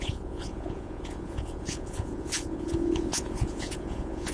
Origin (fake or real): fake